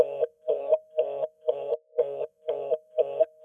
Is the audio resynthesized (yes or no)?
yes